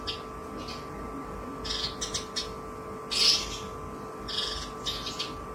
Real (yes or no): yes